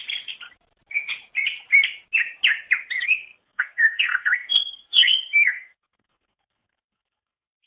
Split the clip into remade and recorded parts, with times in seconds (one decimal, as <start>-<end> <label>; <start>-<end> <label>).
0.0-3.0 recorded; 3.0-7.7 remade

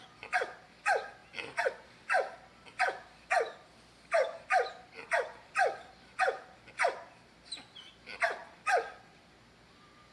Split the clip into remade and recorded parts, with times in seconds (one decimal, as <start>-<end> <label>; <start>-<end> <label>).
0.0-1.2 recorded; 1.2-1.7 remade; 1.7-10.1 recorded

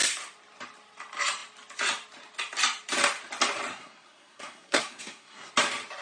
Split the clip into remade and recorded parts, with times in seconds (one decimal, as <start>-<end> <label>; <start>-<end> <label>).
0.0-3.7 recorded; 3.7-5.5 remade; 5.5-6.0 recorded